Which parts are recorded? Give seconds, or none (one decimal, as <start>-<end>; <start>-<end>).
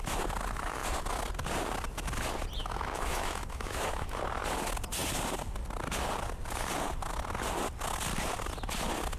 0.0-2.6; 4.2-9.2